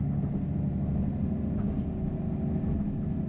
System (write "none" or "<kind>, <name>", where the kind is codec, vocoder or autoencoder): none